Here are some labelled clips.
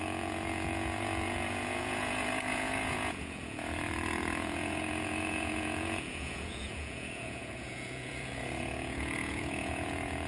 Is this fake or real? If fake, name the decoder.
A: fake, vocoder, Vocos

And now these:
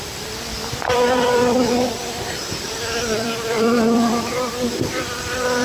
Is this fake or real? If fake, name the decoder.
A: fake, vocoder, BigVGAN v2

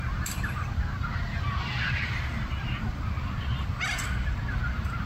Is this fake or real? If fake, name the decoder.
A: real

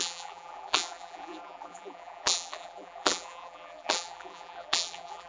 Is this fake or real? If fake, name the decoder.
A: fake, vocoder, BigVGAN v2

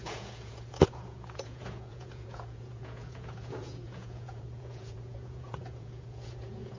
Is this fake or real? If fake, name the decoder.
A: fake, vocoder, Vocos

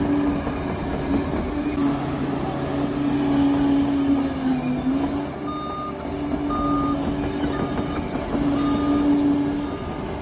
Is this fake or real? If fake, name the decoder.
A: real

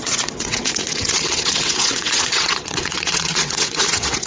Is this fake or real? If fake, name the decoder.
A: fake, vocoder, WaveNeXt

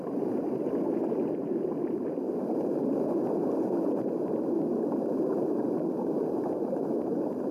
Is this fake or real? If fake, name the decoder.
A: real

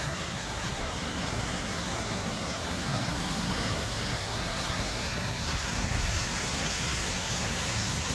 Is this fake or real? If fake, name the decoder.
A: fake, codec, SNAC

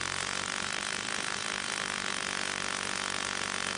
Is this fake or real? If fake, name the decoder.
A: real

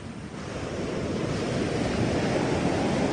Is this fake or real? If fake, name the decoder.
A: real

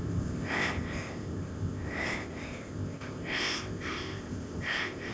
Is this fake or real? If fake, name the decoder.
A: fake, codec, ZipCodec